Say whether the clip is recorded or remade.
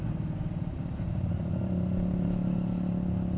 recorded